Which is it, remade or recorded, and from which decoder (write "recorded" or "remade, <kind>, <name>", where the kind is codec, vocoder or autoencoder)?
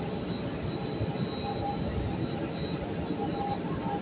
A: recorded